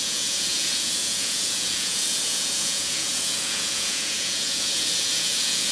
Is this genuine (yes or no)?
no